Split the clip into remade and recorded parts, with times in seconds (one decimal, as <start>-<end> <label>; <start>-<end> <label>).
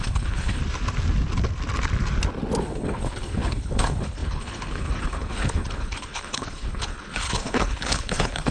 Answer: 0.0-0.6 remade; 0.6-2.6 recorded; 2.6-8.5 remade